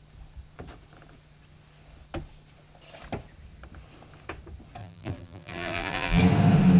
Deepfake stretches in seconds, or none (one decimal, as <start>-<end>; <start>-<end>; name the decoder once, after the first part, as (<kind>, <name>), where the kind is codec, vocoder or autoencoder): 4.8-6.2 (vocoder, BigVGAN v2)